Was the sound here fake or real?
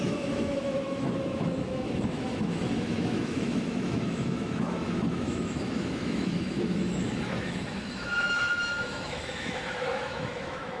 fake